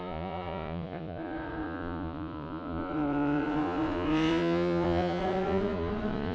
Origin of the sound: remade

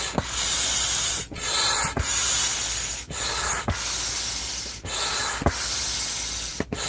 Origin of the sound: recorded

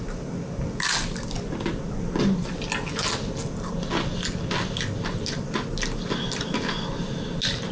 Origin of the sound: recorded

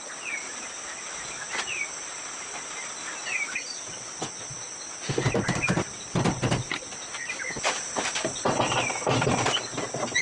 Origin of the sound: recorded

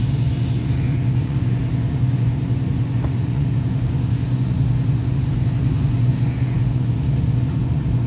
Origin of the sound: remade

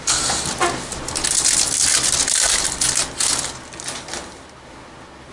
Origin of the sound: recorded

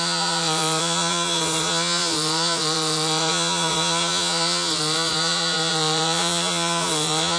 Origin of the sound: remade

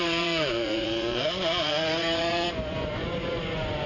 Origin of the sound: remade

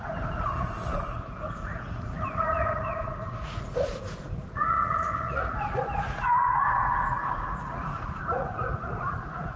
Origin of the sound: remade